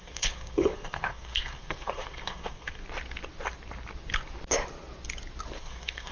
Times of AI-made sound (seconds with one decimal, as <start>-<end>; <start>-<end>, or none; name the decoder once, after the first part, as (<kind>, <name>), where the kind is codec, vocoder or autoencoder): 0.0-2.8 (codec, SNAC); 5.6-6.1